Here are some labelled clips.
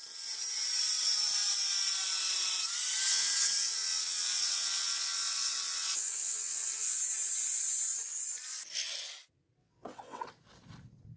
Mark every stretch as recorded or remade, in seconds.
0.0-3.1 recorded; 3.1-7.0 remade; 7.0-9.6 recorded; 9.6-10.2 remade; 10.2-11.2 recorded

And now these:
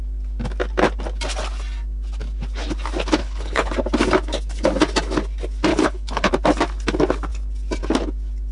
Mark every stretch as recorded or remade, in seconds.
0.0-3.2 recorded; 3.2-3.7 remade; 3.7-5.7 recorded; 5.7-6.3 remade; 6.3-8.5 recorded

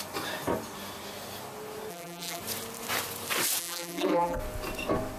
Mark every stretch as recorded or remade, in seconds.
0.0-1.9 recorded; 1.9-2.4 remade; 2.4-3.6 recorded; 3.6-4.4 remade; 4.4-5.2 recorded